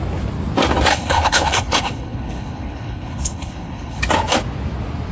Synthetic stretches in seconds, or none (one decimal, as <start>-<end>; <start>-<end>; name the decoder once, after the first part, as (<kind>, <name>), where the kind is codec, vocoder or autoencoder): 0.9-4.0 (codec, HILCodec)